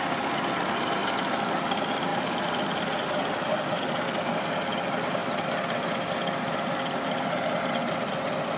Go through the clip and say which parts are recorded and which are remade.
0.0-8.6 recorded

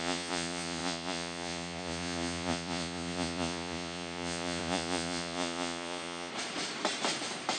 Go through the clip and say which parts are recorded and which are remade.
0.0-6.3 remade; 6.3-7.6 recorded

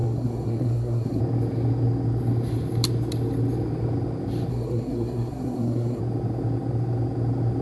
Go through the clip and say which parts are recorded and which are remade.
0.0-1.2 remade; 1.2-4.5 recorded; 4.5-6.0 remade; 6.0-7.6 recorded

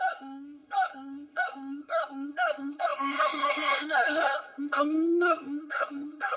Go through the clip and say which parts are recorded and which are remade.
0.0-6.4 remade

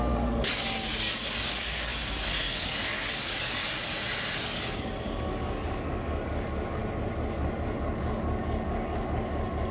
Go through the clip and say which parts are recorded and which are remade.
0.0-3.6 remade; 3.6-4.4 recorded; 4.4-6.8 remade; 6.8-7.3 recorded; 7.3-9.7 remade

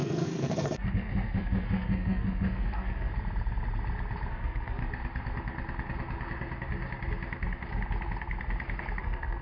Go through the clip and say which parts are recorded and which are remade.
0.0-3.1 remade; 3.1-4.3 recorded; 4.3-4.8 remade; 4.8-9.0 recorded; 9.0-9.4 remade